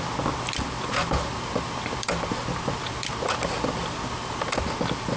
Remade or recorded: remade